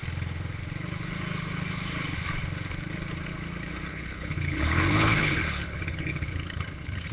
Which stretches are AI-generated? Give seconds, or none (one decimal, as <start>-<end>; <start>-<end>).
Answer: 3.9-7.1